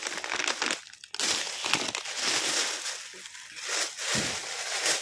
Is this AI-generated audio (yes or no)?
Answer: no